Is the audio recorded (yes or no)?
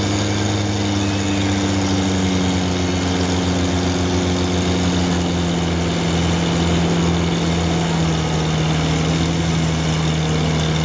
yes